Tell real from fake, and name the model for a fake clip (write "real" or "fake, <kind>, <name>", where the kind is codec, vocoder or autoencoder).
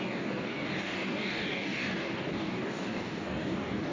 fake, codec, DAC